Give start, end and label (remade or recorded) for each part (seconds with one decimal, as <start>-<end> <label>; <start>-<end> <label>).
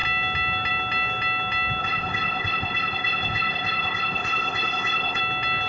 0.0-1.8 recorded; 1.8-5.2 remade; 5.2-5.7 recorded